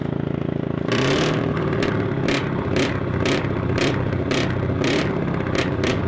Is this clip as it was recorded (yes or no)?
no